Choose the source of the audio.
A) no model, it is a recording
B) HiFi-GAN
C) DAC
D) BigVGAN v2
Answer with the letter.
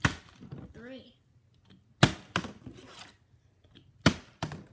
A